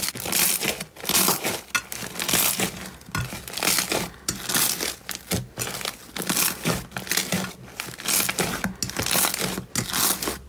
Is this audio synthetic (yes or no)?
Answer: no